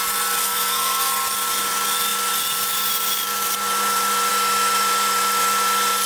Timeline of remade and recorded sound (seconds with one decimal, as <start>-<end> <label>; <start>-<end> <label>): 0.0-0.4 recorded; 0.4-1.1 remade; 1.1-6.1 recorded